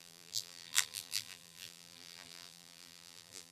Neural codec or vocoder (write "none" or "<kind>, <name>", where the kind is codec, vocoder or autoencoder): vocoder, BigVGAN v2